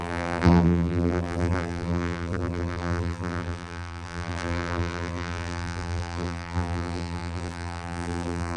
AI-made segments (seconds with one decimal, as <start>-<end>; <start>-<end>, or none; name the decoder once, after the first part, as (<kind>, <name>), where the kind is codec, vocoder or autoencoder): 0.0-8.6 (vocoder, BigVGAN v2)